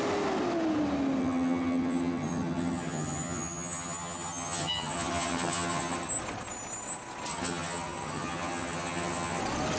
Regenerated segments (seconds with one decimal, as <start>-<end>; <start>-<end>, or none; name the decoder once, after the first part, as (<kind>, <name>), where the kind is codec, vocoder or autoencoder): 1.2-6.1 (vocoder, HiFi-GAN); 7.3-9.4